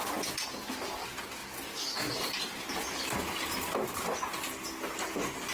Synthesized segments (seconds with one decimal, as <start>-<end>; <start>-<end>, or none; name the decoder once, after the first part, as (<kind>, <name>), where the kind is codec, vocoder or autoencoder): none